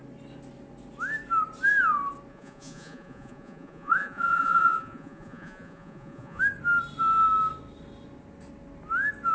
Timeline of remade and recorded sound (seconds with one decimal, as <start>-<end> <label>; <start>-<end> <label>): 0.0-2.3 recorded; 2.3-6.4 remade; 6.4-9.3 recorded

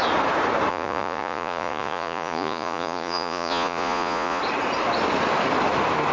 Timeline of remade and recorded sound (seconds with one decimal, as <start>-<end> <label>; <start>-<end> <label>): 0.0-0.7 recorded; 0.7-4.4 remade; 4.4-6.1 recorded